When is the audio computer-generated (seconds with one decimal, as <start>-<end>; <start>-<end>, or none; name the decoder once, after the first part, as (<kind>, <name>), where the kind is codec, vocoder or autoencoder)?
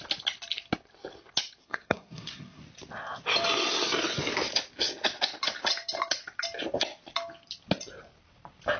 1.6-2.6 (codec, SNAC)